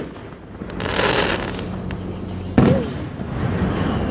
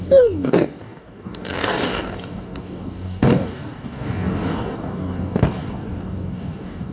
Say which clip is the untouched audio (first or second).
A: first